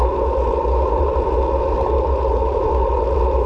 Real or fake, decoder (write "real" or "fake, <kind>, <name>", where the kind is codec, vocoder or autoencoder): real